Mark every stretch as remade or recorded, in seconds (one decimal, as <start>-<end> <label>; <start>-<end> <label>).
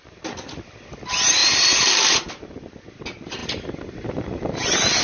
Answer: 0.0-1.4 recorded; 1.4-1.9 remade; 1.9-5.0 recorded